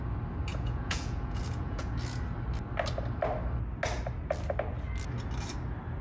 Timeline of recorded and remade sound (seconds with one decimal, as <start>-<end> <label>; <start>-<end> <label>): 0.0-0.5 recorded; 0.5-1.9 remade; 1.9-6.0 recorded